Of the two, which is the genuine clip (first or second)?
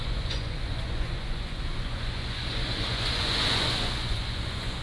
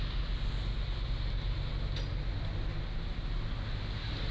second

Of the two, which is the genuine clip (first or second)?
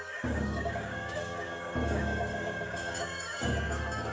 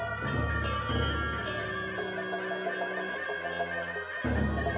second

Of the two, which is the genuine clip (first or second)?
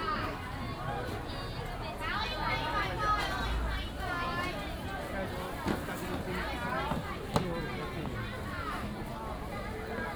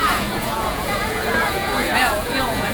first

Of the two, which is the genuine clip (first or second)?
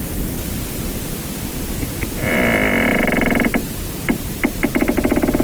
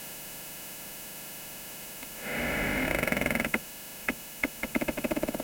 first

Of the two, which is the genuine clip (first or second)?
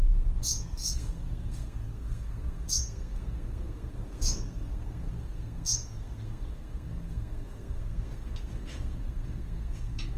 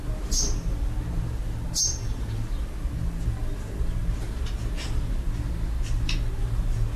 second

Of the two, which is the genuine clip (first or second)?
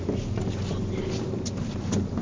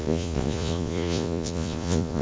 first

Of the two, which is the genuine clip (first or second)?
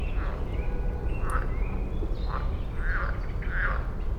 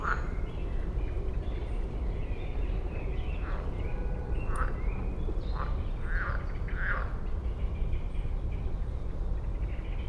first